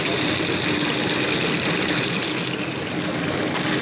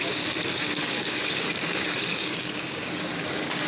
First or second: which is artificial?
second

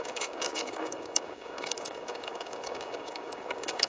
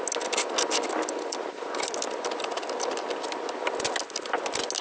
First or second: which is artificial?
first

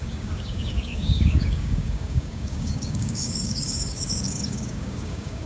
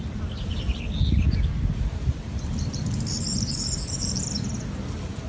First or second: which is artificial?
first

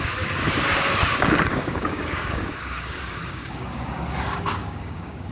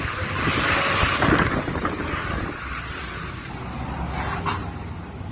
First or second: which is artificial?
first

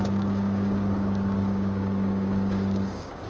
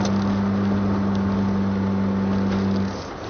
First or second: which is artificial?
first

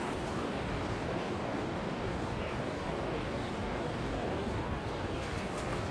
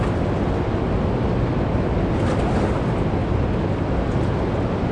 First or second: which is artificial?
first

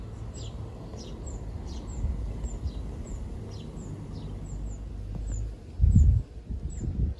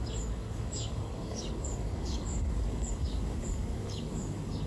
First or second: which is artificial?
second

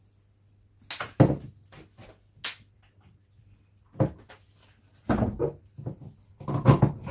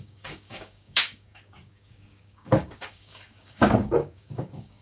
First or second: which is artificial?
second